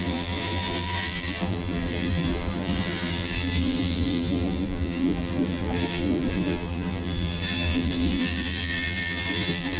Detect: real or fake fake